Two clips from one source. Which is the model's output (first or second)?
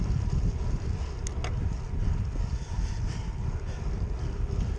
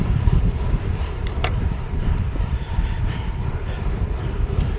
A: second